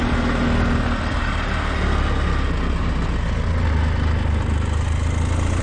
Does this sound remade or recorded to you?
recorded